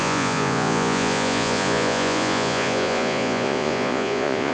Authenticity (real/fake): fake